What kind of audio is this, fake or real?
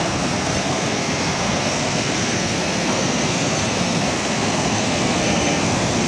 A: fake